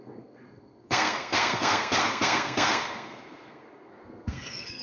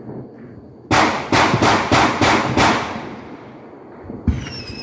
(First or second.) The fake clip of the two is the first